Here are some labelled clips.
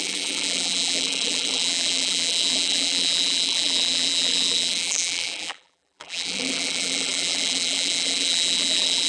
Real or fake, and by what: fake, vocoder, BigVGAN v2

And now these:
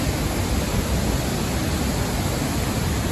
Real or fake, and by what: real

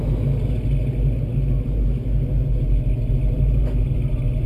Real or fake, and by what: real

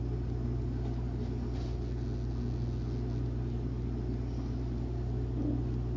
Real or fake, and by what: real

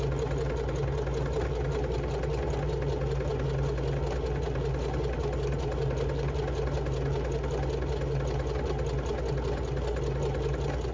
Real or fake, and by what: real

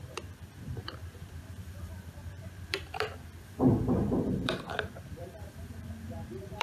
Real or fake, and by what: fake, vocoder, BigVGAN v2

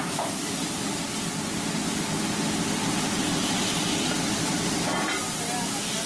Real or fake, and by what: real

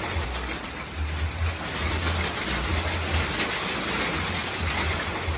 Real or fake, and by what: real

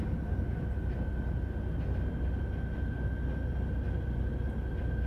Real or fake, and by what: real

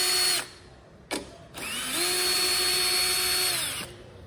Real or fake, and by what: real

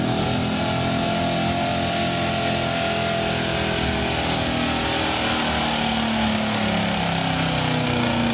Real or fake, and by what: real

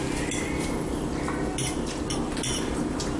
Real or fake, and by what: fake, vocoder, BigVGAN v2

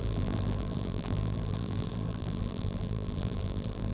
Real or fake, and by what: fake, vocoder, BigVGAN v2